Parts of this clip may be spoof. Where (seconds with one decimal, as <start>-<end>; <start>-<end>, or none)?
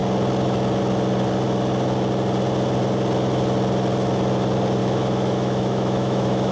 4.8-6.5